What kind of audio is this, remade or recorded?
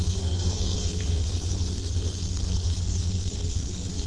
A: remade